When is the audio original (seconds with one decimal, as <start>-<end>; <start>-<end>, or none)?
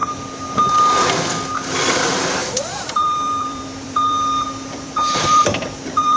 0.0-2.4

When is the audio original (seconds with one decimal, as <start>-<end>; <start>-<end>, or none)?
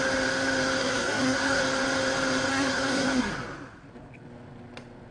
0.0-0.8; 1.6-2.5; 3.3-5.1